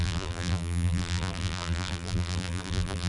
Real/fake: fake